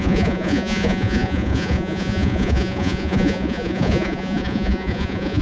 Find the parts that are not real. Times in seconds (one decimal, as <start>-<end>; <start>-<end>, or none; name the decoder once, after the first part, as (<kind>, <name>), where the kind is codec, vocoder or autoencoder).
0.0-5.4 (vocoder, Vocos)